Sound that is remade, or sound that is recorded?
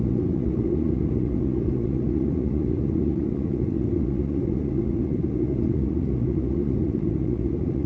remade